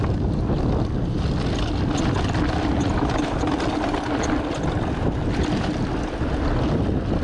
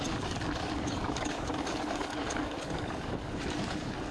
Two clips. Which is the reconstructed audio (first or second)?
second